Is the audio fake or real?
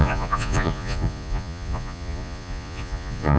fake